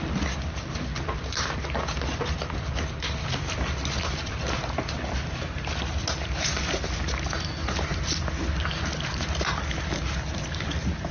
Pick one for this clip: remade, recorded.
recorded